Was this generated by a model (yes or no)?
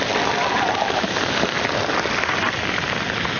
no